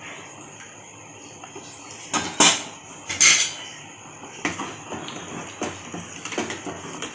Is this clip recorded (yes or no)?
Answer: yes